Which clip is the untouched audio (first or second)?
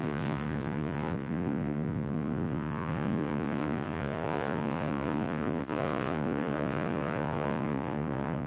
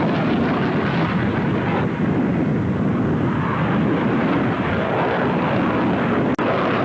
second